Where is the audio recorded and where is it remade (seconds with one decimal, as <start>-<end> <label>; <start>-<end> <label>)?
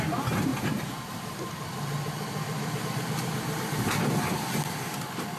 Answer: 0.0-0.5 recorded; 0.5-2.8 remade; 2.8-5.4 recorded